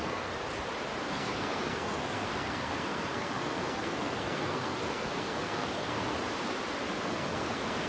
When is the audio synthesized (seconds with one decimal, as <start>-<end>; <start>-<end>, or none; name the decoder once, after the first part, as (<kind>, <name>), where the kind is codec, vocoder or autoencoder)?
0.0-0.4 (codec, SNAC); 1.1-6.1; 7.0-7.9